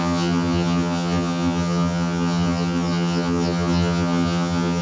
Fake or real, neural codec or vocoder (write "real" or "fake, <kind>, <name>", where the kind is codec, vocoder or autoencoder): fake, vocoder, HiFi-GAN